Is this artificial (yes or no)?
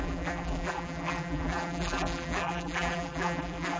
yes